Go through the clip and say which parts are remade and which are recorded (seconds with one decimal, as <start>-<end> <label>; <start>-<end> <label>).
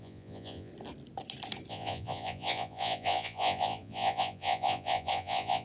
0.0-0.7 remade; 0.7-1.7 recorded; 1.7-5.6 remade